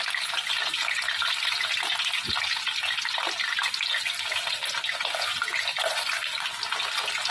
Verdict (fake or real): real